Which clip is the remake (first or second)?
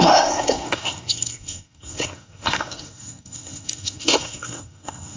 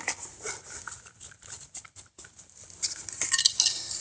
first